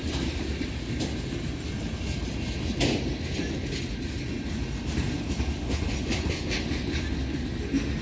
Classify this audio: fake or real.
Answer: real